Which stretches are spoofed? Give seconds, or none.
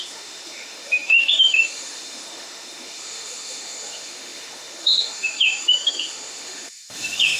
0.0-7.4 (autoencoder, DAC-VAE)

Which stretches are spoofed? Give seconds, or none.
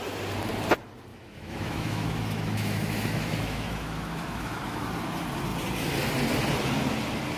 1.1-4.9 (autoencoder, DAC-VAE)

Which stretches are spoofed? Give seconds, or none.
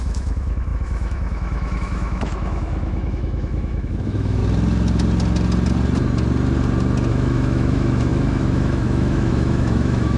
0.0-4.4 (autoencoder, DAC-VAE); 7.1-10.2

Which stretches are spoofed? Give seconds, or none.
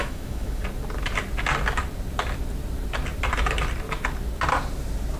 0.0-0.6 (autoencoder, DAC-VAE)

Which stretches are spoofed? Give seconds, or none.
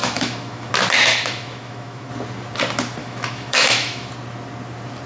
0.0-0.7 (autoencoder, DAC-VAE); 1.1-2.1; 3.0-4.1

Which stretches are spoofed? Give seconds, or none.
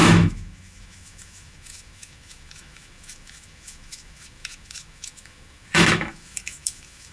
0.0-7.1 (autoencoder, DAC-VAE)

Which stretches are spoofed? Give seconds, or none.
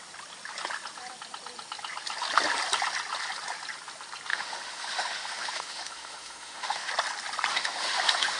4.3-6.9 (autoencoder, DAC-VAE); 7.5-8.4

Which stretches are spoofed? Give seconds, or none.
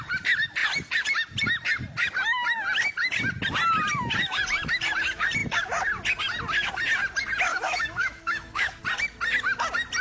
7.5-8.8 (autoencoder, DAC-VAE)